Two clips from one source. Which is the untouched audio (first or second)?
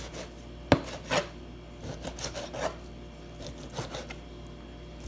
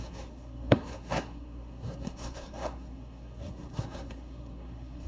first